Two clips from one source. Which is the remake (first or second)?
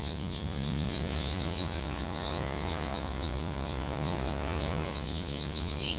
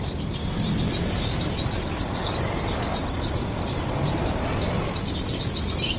first